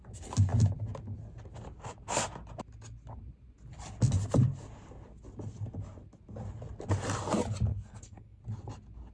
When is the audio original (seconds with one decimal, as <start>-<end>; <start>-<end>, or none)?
0.0-7.7; 8.4-9.1